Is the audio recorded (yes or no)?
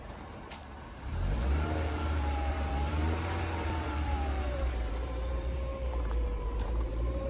no